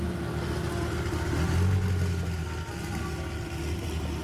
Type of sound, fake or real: real